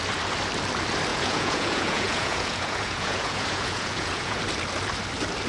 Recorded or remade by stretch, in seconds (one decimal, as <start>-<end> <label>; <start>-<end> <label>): 0.0-1.1 recorded; 1.1-4.4 remade; 4.4-5.5 recorded